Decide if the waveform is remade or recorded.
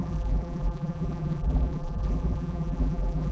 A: remade